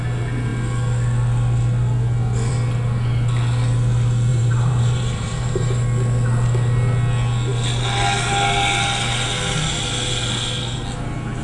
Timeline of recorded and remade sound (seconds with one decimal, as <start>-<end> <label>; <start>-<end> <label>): 0.0-4.3 recorded; 4.3-5.8 remade; 5.8-11.4 recorded